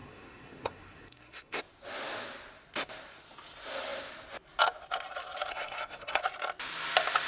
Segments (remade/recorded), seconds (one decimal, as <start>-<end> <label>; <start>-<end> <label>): 0.0-1.6 remade; 1.6-5.5 recorded; 5.5-6.2 remade; 6.2-7.3 recorded